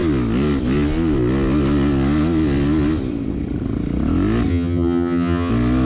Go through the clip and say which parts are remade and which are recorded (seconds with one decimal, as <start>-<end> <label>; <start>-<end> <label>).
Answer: 0.0-4.5 recorded; 4.5-5.5 remade; 5.5-5.9 recorded

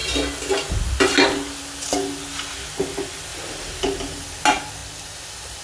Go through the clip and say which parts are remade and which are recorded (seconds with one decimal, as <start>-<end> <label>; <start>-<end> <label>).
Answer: 0.0-3.3 recorded; 3.3-4.2 remade; 4.2-5.6 recorded

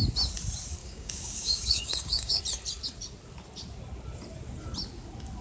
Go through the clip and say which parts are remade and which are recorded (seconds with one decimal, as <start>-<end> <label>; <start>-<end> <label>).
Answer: 0.0-0.8 recorded; 0.8-2.4 remade; 2.4-5.4 recorded

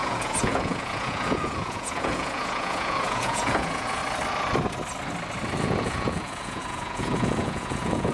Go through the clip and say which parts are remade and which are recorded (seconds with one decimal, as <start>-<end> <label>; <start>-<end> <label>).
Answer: 0.0-4.0 remade; 4.0-5.6 recorded; 5.6-8.1 remade

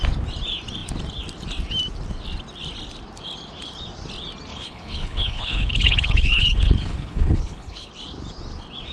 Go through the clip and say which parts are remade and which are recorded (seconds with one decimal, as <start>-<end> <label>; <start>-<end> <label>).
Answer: 0.0-4.5 recorded; 4.5-7.9 remade; 7.9-8.9 recorded

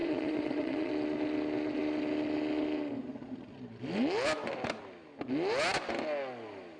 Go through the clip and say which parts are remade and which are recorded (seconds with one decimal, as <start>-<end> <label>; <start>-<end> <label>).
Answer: 0.0-0.9 remade; 0.9-6.8 recorded

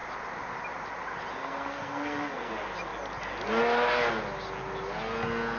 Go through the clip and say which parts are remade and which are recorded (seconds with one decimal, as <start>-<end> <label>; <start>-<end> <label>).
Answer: 0.0-1.4 recorded; 1.4-2.5 remade; 2.5-5.6 recorded